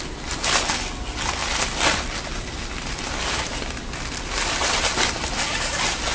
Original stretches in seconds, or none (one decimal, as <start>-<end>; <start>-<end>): 0.0-6.1